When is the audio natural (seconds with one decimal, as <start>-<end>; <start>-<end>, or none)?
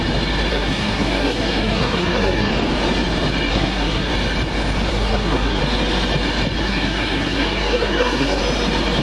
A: 0.0-0.5; 2.5-3.5; 4.1-4.9; 5.6-6.6; 8.4-9.0